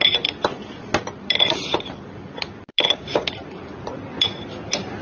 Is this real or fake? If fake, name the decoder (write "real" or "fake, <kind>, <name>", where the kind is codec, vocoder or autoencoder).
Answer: real